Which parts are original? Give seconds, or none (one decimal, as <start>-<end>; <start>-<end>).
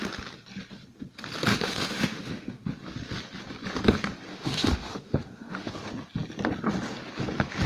0.0-1.5; 2.7-4.3; 5.7-7.7